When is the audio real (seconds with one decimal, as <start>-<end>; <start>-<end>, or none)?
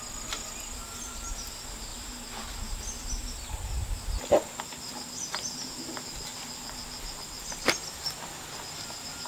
0.0-9.3